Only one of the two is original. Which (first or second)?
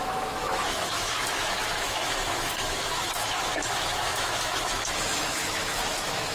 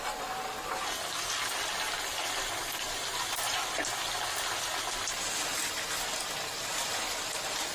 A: second